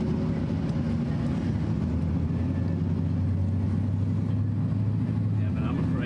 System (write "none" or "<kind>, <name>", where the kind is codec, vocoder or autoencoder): none